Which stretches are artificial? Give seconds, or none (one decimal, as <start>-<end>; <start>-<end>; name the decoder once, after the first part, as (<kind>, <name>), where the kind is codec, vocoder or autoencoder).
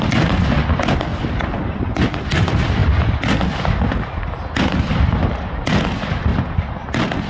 1.1-1.6 (vocoder, BigVGAN v2)